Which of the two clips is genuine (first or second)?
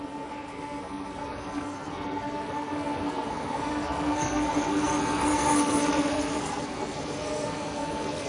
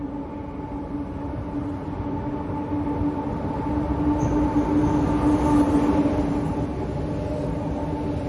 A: second